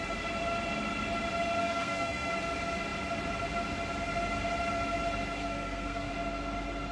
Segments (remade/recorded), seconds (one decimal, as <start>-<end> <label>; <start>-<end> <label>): 0.0-1.6 recorded; 1.6-2.3 remade; 2.3-5.4 recorded; 5.4-6.1 remade; 6.1-6.9 recorded